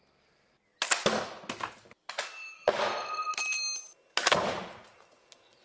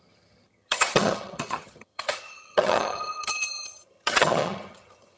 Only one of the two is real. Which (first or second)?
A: first